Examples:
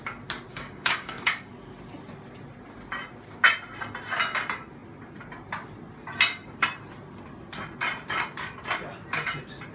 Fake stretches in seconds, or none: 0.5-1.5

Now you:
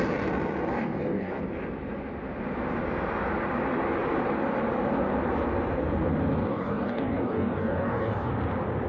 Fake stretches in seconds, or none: 0.7-1.4; 6.5-8.3

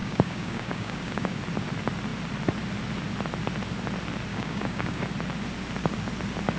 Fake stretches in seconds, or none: 0.0-1.4; 4.3-5.0

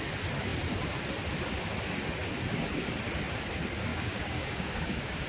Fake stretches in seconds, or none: 3.9-5.3

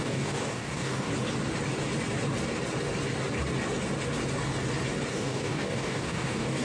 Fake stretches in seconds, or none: 0.0-1.1; 5.1-6.6

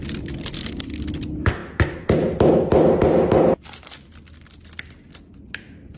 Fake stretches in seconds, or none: none

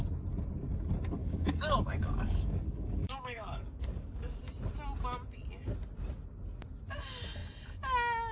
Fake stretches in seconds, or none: 1.2-4.4